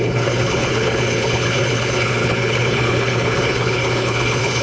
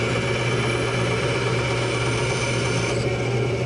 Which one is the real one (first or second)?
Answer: second